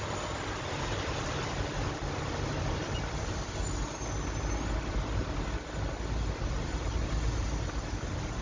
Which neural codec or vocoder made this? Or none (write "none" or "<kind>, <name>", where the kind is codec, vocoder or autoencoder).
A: none